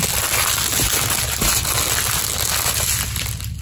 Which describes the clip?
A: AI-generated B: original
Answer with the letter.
B